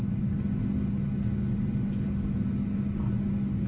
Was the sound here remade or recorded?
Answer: recorded